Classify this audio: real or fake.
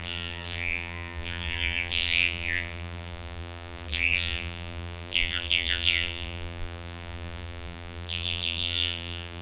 fake